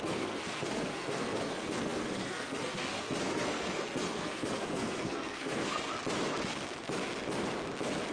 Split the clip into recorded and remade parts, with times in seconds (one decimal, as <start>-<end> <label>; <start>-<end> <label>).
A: 0.0-5.9 remade; 5.9-8.1 recorded

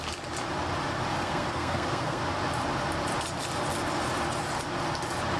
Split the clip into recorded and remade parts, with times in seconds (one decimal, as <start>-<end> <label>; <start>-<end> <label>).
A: 0.0-1.1 recorded; 1.1-2.2 remade; 2.2-5.4 recorded

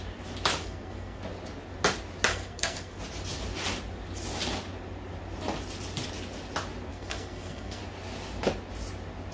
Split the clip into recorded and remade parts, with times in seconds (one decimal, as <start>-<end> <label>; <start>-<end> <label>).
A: 0.0-0.6 recorded; 0.6-1.2 remade; 1.2-2.3 recorded; 2.3-3.0 remade; 3.0-6.9 recorded; 6.9-7.8 remade; 7.8-9.3 recorded

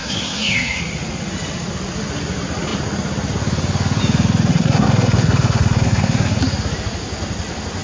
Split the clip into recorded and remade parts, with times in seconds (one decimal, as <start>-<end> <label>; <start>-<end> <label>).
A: 0.0-0.8 remade; 0.8-4.5 recorded; 4.5-6.4 remade; 6.4-7.8 recorded

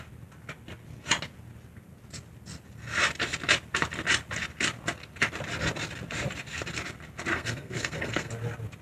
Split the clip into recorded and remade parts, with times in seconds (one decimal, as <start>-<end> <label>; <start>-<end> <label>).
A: 0.0-7.3 recorded; 7.3-8.3 remade; 8.3-8.8 recorded

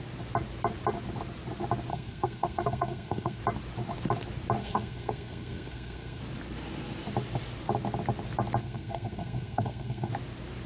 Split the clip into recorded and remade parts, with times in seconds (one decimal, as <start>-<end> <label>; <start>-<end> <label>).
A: 0.0-1.9 recorded; 1.9-3.4 remade; 3.4-4.6 recorded; 4.6-6.2 remade; 6.2-8.6 recorded; 8.6-10.1 remade; 10.1-10.7 recorded